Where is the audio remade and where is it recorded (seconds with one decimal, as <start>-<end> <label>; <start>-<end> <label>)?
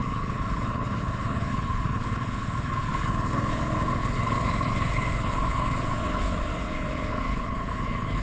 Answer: 0.0-8.2 remade